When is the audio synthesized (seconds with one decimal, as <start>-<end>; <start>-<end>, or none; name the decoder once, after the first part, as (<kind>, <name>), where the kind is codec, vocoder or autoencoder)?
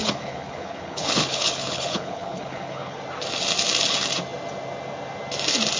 0.0-3.0 (codec, HILCodec)